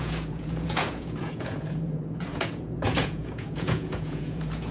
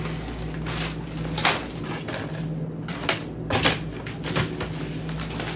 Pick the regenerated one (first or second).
first